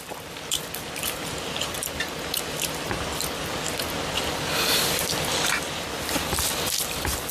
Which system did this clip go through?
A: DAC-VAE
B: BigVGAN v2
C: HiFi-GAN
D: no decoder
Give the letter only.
D